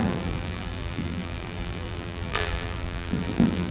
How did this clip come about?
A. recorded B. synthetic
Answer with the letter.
B